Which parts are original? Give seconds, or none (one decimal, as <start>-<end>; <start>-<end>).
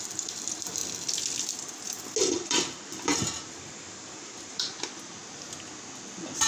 0.0-3.1; 4.8-6.5